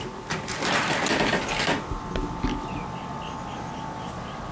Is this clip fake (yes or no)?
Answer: no